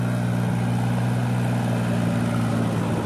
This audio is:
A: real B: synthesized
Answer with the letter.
A